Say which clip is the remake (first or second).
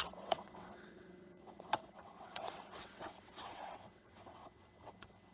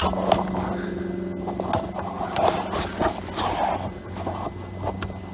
first